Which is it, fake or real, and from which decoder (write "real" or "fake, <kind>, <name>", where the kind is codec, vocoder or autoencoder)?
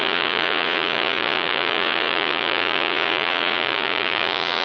fake, vocoder, Vocos